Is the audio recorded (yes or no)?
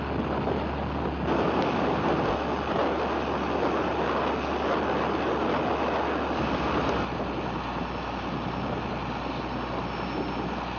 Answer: yes